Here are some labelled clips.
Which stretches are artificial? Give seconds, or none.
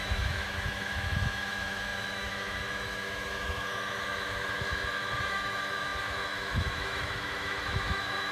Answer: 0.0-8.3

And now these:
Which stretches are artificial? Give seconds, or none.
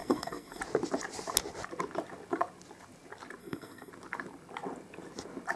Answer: 0.0-0.6; 3.4-3.9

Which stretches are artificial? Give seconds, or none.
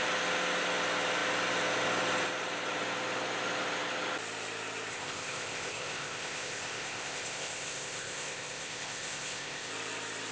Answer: 4.9-9.7